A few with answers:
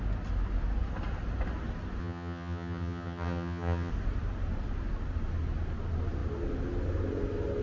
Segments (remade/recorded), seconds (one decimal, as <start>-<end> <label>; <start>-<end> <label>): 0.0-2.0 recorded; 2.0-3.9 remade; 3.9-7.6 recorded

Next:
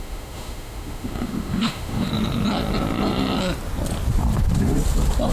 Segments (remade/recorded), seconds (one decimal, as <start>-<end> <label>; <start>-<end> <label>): 0.0-2.1 remade; 2.1-5.3 recorded

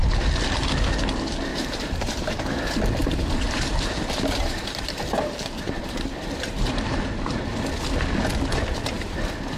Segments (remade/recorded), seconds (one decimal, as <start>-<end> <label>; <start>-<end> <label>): 0.0-1.5 recorded; 1.5-2.4 remade; 2.4-3.0 recorded; 3.0-7.5 remade; 7.5-9.6 recorded

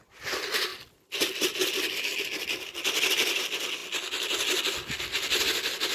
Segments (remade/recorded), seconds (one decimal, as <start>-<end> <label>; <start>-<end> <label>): 0.0-5.9 recorded

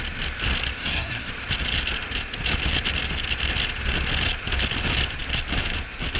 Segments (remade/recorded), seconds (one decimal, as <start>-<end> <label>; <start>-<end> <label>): 0.0-0.8 recorded; 0.8-1.3 remade; 1.3-6.2 recorded

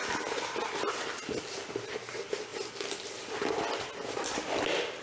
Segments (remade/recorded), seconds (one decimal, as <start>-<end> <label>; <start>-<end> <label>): 0.0-5.0 recorded